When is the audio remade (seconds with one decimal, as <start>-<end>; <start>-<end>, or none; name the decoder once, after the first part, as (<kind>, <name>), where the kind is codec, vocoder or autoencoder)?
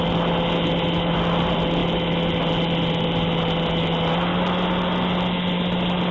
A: none